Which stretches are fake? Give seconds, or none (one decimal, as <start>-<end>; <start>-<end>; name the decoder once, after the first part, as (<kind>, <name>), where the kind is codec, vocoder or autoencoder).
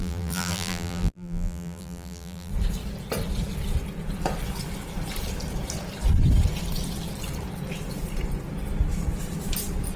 0.0-2.5 (vocoder, BigVGAN v2)